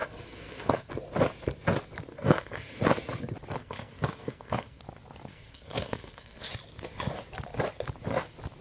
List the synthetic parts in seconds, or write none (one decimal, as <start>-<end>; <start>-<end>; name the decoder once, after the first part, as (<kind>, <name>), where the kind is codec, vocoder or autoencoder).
0.0-0.9 (codec, SNAC); 2.1-2.8; 3.6-4.8; 5.3-6.5